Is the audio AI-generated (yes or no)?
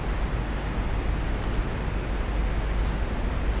no